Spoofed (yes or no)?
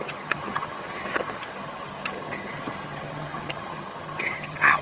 yes